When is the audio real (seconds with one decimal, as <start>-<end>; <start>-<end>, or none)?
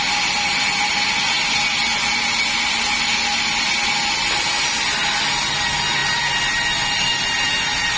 0.0-8.0